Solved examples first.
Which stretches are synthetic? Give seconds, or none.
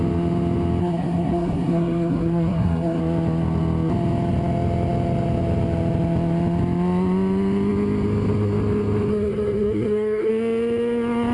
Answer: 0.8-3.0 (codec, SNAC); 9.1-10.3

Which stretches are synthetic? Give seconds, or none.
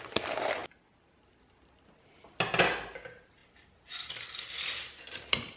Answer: none